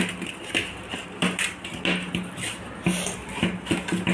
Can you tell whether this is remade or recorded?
recorded